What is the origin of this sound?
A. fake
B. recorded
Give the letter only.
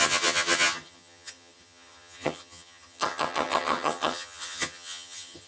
A